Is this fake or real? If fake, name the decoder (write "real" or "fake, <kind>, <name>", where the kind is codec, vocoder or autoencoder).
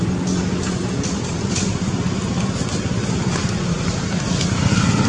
real